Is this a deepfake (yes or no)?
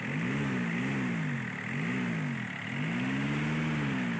no